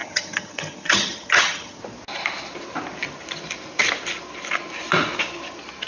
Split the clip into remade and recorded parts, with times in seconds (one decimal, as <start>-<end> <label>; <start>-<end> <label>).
0.0-1.8 remade; 1.8-5.9 recorded